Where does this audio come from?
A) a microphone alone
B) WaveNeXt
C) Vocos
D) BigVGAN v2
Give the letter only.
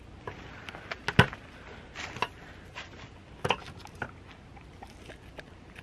A